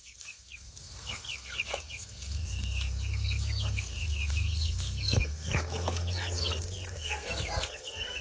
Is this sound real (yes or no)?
no